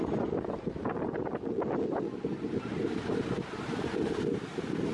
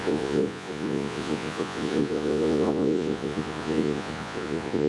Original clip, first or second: first